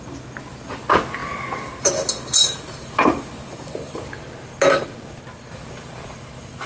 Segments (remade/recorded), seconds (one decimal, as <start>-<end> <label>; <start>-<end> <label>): 0.0-6.7 recorded